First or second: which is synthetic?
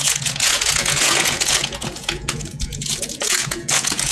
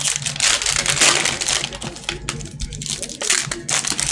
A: first